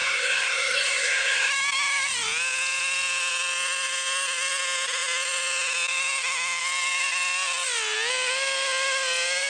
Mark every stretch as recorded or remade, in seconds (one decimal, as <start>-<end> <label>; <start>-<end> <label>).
0.0-1.5 remade; 1.5-9.5 recorded